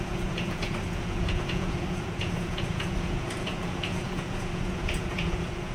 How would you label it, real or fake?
fake